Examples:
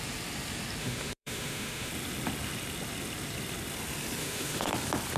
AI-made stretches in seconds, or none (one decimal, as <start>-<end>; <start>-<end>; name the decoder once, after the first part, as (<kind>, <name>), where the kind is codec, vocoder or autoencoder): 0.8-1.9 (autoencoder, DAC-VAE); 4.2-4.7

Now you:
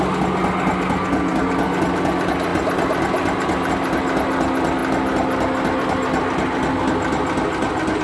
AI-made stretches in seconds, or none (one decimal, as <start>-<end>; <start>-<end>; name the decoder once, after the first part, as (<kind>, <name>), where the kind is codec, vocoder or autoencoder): none

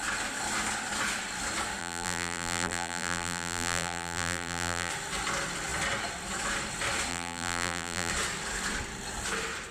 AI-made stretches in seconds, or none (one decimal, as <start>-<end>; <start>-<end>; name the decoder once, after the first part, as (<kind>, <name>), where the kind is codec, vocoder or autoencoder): 1.8-4.9 (vocoder, BigVGAN v2); 7.1-8.1

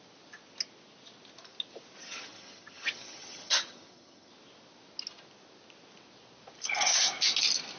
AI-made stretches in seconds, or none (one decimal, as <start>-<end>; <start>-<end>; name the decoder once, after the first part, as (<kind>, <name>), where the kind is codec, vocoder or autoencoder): 2.0-4.3 (vocoder, HiFi-GAN)

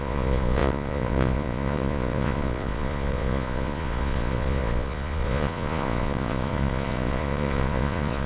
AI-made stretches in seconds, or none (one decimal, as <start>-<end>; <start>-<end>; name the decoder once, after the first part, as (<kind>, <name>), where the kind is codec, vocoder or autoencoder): 0.0-8.3 (vocoder, Vocos)